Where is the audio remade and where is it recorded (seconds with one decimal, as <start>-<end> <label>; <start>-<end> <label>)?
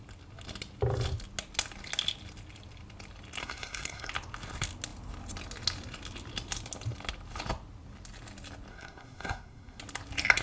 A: 0.0-3.4 recorded; 3.4-4.1 remade; 4.1-8.7 recorded; 8.7-9.8 remade; 9.8-10.4 recorded